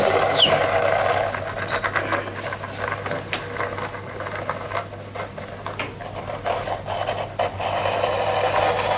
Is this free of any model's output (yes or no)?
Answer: yes